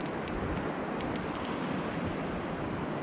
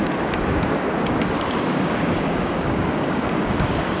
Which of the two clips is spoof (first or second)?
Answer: second